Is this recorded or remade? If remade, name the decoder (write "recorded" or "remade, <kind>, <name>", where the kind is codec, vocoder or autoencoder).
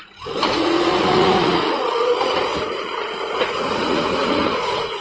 remade, vocoder, Vocos